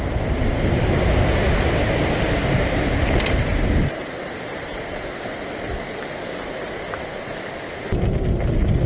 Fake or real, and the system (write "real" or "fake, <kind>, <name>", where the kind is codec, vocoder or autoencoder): real